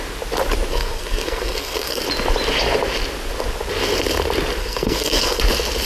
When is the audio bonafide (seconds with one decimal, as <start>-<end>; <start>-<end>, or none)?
0.0-0.7; 2.0-4.6; 5.4-5.9